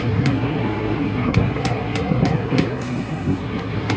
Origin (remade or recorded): remade